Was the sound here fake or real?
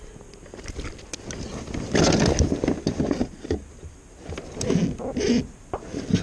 real